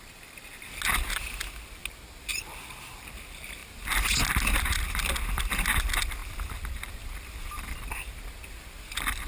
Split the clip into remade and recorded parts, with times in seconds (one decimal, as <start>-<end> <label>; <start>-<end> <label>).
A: 0.0-9.3 recorded